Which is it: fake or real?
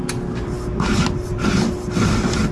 real